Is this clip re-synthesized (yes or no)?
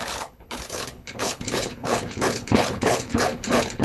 yes